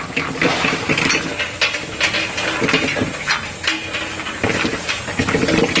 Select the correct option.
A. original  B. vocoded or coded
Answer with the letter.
A